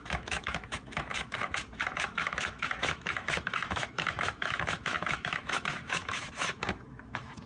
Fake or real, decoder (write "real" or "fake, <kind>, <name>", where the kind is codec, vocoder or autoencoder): fake, autoencoder, DAC-VAE